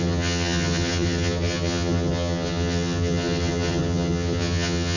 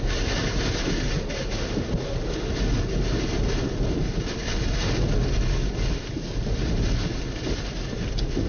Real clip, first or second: second